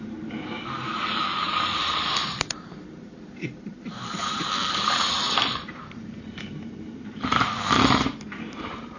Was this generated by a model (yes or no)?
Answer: yes